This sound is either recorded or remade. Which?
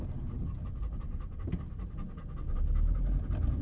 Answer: recorded